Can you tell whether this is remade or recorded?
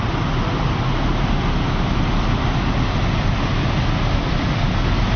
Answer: recorded